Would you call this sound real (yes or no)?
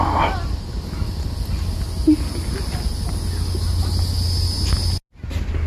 yes